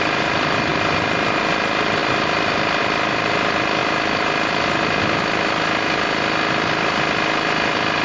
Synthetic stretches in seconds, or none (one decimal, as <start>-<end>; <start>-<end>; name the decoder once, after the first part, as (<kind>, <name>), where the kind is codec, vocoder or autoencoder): none